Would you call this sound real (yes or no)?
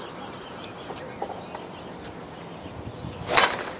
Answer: yes